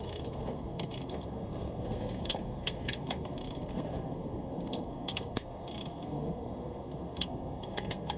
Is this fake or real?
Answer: fake